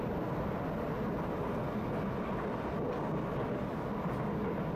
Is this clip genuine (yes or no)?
yes